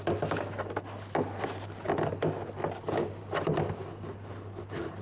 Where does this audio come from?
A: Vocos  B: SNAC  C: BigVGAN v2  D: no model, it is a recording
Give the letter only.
D